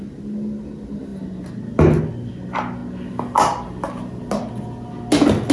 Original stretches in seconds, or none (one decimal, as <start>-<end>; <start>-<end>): 0.0-5.5